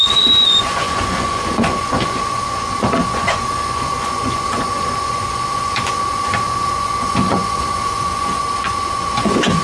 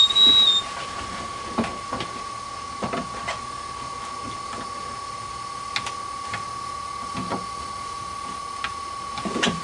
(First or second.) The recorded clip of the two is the second